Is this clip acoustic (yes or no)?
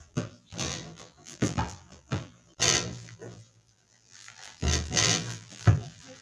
no